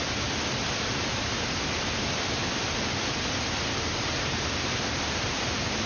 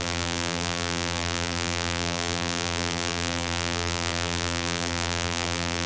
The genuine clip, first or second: first